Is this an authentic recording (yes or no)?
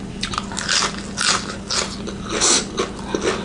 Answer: yes